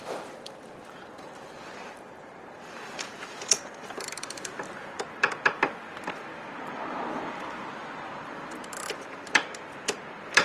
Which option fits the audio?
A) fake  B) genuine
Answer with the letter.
A